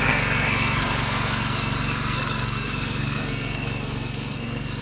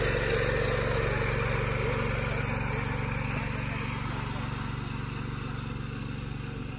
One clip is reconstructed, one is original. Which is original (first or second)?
second